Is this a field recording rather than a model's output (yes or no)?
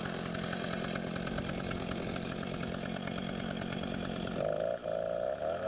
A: yes